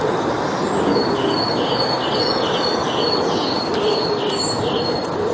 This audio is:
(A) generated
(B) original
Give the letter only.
B